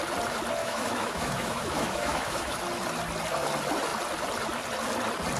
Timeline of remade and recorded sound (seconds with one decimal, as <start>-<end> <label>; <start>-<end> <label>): 0.0-0.6 recorded; 0.6-2.6 remade; 2.6-5.4 recorded